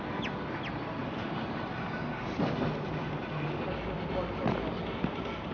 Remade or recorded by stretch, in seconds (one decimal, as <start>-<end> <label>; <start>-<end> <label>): 0.0-5.5 recorded